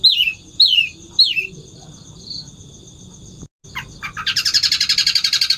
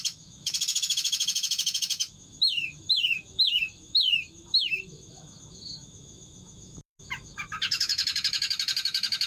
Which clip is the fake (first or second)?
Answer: second